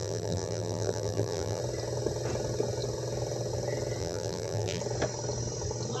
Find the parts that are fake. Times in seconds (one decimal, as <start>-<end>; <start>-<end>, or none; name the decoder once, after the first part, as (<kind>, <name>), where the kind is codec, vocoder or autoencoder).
0.0-1.6 (vocoder, BigVGAN v2); 4.0-4.8